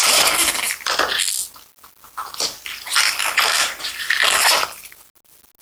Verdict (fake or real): real